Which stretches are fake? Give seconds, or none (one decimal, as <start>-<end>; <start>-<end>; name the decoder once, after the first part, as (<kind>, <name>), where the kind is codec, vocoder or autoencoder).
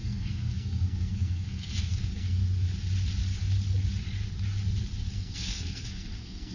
0.0-2.4 (codec, SNAC); 5.1-6.5